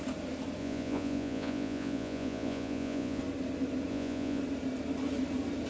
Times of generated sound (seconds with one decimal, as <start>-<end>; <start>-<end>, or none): 0.6-3.2; 3.9-4.4